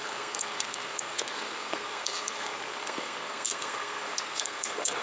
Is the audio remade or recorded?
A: remade